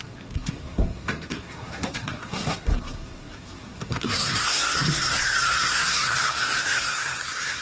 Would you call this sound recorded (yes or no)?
no